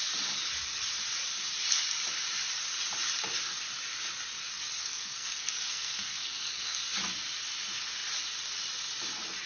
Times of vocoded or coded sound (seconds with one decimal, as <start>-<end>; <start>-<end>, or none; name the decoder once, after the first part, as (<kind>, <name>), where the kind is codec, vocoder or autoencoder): 4.8-6.8 (codec, SNAC)